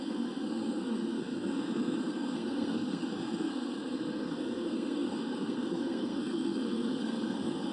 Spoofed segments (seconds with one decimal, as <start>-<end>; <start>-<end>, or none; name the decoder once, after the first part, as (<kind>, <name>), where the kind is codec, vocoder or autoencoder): 0.0-7.7 (codec, SNAC)